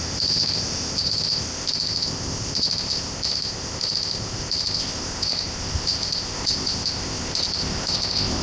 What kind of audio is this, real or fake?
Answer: fake